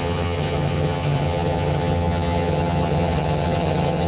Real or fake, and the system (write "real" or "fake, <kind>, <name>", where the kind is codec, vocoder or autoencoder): fake, vocoder, HiFi-GAN